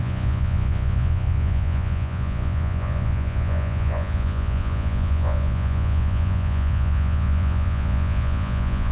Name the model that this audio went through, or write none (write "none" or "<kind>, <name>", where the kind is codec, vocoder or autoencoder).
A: vocoder, Vocos